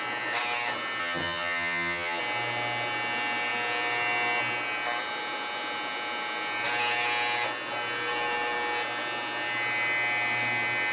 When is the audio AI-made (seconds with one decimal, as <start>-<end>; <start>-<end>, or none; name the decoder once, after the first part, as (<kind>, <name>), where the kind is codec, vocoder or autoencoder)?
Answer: 1.0-2.2 (vocoder, HiFi-GAN)